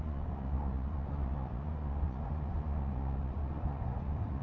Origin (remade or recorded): remade